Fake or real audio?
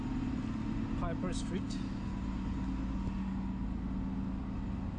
real